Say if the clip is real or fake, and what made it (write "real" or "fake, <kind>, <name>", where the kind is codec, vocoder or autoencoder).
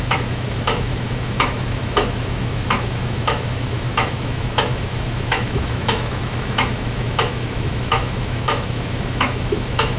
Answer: fake, autoencoder, DAC-VAE